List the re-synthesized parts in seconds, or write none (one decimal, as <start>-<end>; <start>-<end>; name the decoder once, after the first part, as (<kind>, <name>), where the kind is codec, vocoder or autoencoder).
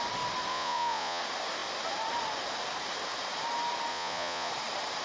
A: 0.5-1.2 (vocoder, Vocos); 3.9-4.5